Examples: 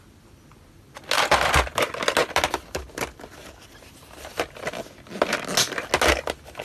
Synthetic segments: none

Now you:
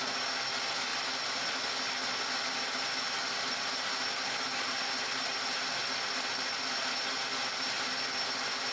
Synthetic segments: none

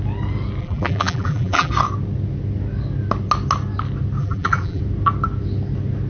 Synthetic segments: 0.6-1.7 (vocoder, BigVGAN v2); 4.2-4.8

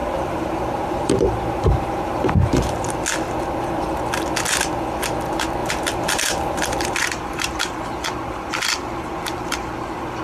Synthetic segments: 0.0-2.8 (vocoder, BigVGAN v2); 5.6-7.6

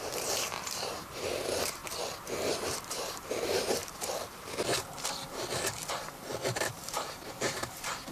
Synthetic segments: 0.0-1.8 (vocoder, BigVGAN v2); 2.8-3.8; 6.6-8.1